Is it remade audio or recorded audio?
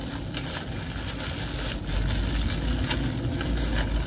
recorded